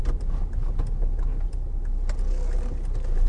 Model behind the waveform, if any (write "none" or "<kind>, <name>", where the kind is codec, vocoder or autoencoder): none